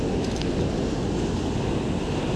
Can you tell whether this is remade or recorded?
recorded